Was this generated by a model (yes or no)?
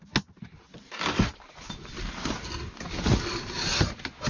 no